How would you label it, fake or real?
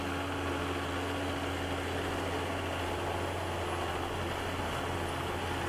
real